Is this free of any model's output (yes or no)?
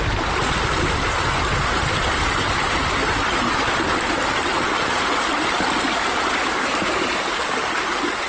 yes